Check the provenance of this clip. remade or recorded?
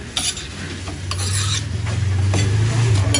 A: recorded